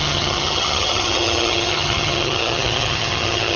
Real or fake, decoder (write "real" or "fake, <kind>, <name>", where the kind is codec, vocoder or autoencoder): fake, vocoder, HiFi-GAN